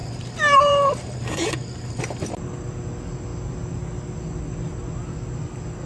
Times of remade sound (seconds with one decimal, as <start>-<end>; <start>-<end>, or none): 0.0-2.0